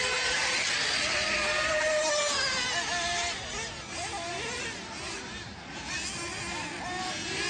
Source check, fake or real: real